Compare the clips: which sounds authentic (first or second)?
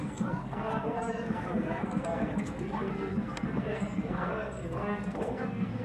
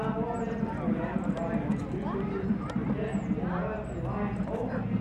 second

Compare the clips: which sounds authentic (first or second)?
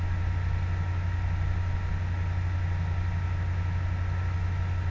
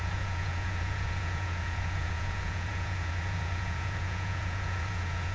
first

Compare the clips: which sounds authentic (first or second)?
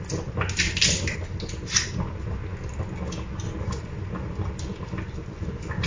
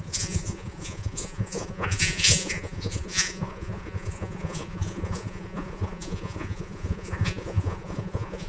first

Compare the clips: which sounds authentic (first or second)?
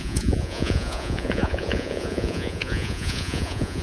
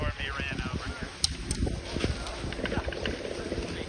second